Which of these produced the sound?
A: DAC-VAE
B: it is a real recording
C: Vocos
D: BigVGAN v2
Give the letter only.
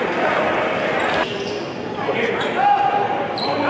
B